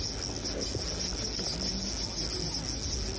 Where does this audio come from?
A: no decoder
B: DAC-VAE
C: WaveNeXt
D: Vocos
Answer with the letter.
A